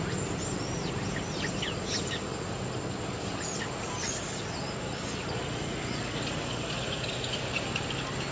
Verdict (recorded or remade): recorded